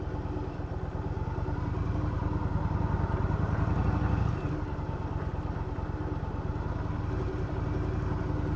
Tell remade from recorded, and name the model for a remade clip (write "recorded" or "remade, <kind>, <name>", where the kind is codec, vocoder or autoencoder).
recorded